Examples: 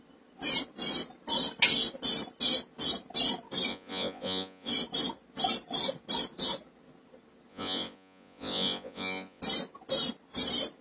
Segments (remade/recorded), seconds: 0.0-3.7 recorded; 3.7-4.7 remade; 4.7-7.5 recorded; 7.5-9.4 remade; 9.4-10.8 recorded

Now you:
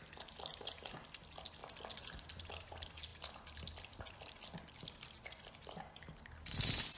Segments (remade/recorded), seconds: 0.0-7.0 recorded

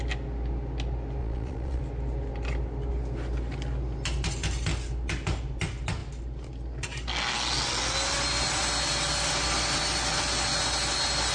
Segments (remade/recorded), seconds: 0.0-1.2 recorded; 1.2-1.8 remade; 1.8-11.3 recorded

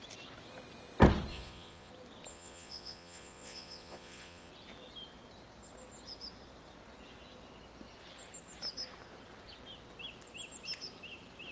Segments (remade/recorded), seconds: 0.0-1.3 recorded; 1.3-1.9 remade; 1.9-2.3 recorded; 2.3-4.5 remade; 4.5-11.5 recorded

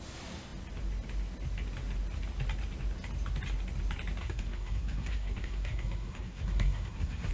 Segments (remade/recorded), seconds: 0.0-4.2 recorded; 4.2-7.3 remade